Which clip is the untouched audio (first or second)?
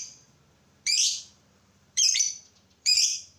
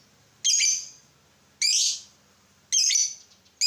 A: second